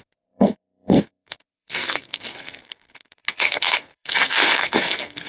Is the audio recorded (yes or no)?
no